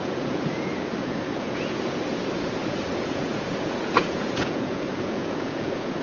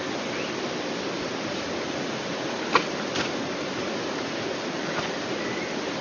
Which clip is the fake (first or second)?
first